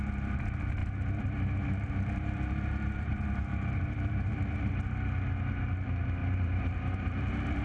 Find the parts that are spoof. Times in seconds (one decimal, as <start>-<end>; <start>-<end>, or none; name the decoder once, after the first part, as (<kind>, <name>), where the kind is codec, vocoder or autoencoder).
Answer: 0.8-4.7 (vocoder, BigVGAN v2); 6.2-7.6

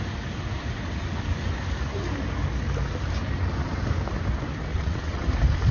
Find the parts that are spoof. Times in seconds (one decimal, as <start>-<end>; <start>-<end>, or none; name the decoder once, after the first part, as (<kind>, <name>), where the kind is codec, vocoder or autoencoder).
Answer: 4.7-5.2 (vocoder, WaveNeXt)

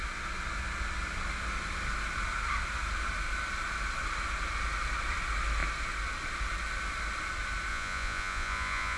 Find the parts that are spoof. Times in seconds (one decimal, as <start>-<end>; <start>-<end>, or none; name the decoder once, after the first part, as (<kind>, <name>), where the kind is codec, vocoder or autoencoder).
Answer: 7.7-9.0 (vocoder, Vocos)

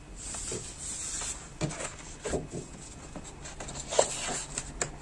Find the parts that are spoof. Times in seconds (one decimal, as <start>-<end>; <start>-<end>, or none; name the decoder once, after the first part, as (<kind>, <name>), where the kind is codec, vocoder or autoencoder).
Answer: none

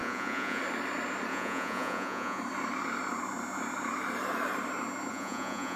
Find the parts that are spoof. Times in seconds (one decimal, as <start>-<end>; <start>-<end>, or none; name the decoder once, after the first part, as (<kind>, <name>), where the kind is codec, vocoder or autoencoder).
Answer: 0.0-0.6 (vocoder, Vocos); 1.3-2.4; 5.1-5.8